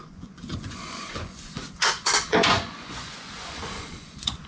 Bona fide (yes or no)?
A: no